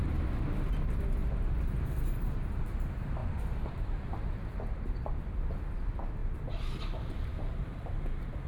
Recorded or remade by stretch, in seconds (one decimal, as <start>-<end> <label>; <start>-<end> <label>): 0.0-1.2 recorded; 1.2-2.8 remade; 2.8-3.2 recorded; 3.2-5.1 remade; 5.1-8.5 recorded